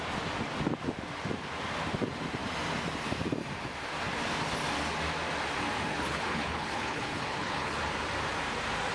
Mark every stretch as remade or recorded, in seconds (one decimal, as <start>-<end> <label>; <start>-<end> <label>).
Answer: 0.0-5.9 recorded; 5.9-7.8 remade; 7.8-8.9 recorded